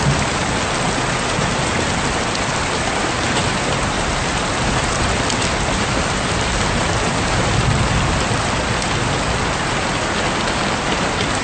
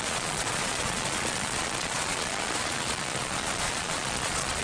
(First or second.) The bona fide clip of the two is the first